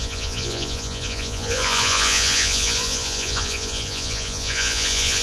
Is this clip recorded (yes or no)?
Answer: no